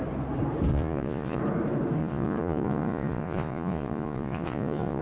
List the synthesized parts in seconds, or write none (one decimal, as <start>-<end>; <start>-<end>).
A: 0.7-1.4; 2.0-5.0